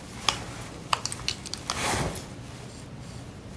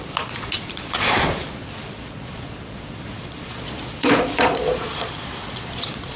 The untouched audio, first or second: first